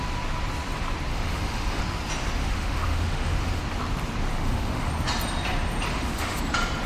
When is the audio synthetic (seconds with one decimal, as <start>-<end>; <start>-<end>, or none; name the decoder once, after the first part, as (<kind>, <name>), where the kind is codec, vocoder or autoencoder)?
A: 1.1-1.8 (autoencoder, DAC-VAE); 2.4-3.6; 4.3-4.9; 5.9-6.4